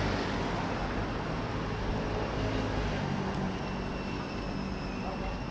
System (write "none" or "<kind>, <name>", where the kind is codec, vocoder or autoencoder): none